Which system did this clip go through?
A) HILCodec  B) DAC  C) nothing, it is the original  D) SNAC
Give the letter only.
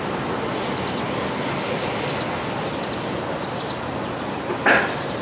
C